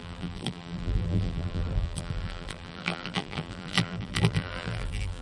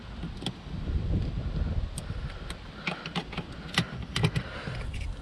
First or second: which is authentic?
second